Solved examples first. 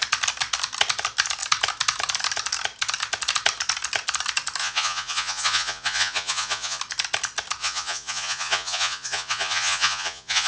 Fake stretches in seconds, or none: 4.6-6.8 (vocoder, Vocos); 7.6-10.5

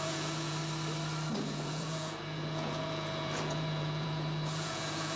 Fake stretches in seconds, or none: 0.0-0.6 (vocoder, Vocos); 1.4-5.2

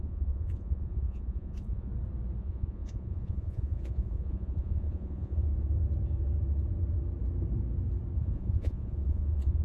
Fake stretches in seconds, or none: 0.0-1.9 (vocoder, Vocos); 2.4-5.5; 8.2-9.6

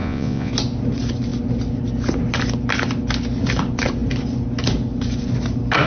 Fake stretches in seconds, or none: 0.0-0.5 (vocoder, Vocos)

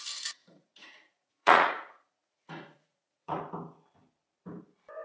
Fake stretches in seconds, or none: 0.4-3.4 (vocoder, Vocos)

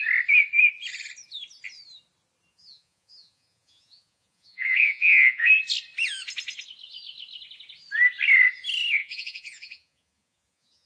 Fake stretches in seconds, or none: 2.5-5.5 (vocoder, Vocos); 9.0-10.9

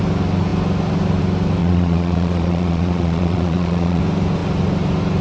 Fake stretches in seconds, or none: 1.6-4.0 (vocoder, Vocos)

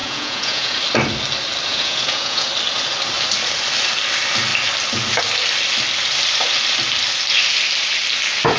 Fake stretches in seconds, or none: 0.0-0.8 (vocoder, Vocos); 1.7-2.5